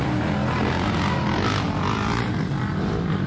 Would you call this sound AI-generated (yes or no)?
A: no